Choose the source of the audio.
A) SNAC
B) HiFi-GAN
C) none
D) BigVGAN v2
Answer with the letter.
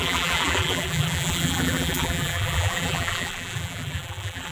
D